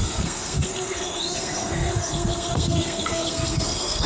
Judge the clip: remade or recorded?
remade